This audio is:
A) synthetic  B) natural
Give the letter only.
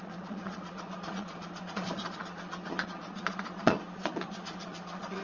A